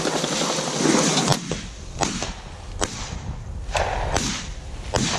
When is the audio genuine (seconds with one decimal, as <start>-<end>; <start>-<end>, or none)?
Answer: 0.0-5.2